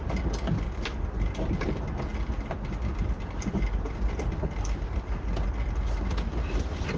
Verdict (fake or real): real